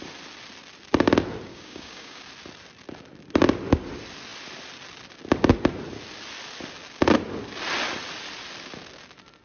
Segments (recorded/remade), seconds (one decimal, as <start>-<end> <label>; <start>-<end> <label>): 0.0-1.5 recorded; 1.5-2.2 remade; 2.2-9.4 recorded